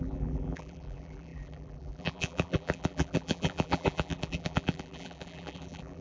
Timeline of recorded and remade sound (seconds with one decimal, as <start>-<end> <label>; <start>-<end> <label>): 0.0-6.0 remade